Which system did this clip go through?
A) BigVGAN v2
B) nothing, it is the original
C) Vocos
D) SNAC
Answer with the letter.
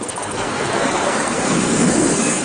D